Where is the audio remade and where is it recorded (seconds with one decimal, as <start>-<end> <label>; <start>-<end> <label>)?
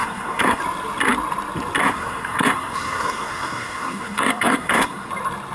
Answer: 0.0-0.6 remade; 0.6-1.8 recorded; 1.8-5.1 remade; 5.1-5.5 recorded